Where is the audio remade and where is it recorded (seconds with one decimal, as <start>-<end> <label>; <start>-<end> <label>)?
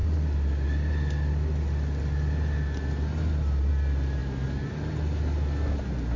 0.0-6.2 recorded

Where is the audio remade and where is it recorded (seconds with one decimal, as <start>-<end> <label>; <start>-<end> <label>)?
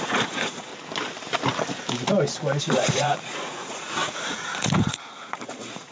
0.0-0.7 remade; 0.7-2.6 recorded; 2.6-5.9 remade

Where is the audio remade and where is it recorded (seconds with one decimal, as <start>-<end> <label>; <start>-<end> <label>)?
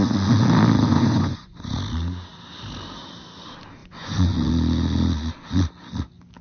0.0-0.9 recorded; 0.9-1.7 remade; 1.7-3.8 recorded; 3.8-4.5 remade; 4.5-6.4 recorded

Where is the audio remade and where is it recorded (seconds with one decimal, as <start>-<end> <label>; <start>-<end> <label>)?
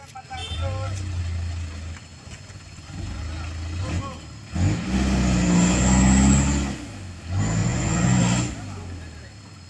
0.0-2.1 recorded; 2.1-3.2 remade; 3.2-7.6 recorded; 7.6-8.2 remade; 8.2-9.7 recorded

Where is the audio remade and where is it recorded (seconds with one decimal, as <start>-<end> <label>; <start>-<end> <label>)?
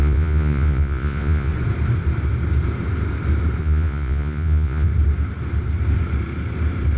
0.0-1.5 remade; 1.5-3.6 recorded; 3.6-4.9 remade; 4.9-7.0 recorded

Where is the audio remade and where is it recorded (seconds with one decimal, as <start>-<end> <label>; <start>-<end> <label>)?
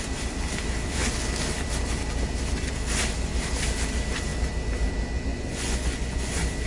0.0-5.3 recorded; 5.3-6.3 remade; 6.3-6.7 recorded